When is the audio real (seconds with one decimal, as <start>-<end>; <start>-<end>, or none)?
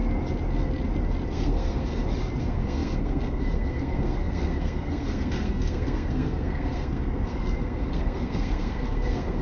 0.0-1.3; 1.9-2.4